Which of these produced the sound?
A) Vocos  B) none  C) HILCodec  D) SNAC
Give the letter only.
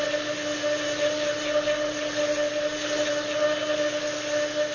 B